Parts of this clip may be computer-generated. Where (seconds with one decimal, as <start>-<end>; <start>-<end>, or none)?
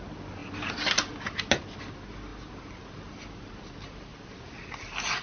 2.3-3.4; 4.1-5.2